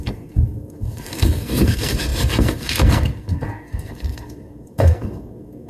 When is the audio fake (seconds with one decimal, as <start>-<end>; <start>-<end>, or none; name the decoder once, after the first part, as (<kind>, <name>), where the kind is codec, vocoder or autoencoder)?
0.0-5.7 (codec, SNAC)